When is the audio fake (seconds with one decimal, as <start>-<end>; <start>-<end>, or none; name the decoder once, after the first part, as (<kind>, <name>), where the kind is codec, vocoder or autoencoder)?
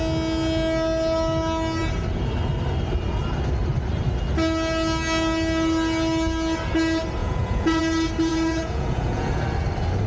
7.2-7.8 (vocoder, Vocos); 8.3-9.4